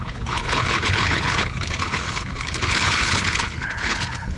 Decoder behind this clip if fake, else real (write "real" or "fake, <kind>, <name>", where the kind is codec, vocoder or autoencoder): fake, codec, HILCodec